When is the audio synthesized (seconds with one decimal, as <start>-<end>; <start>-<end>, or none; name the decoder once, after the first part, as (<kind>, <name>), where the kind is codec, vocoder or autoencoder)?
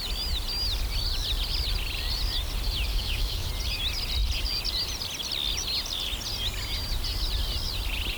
2.9-3.5 (codec, DAC)